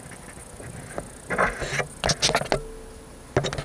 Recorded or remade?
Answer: recorded